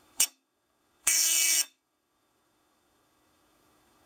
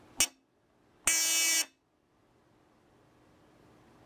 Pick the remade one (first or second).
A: first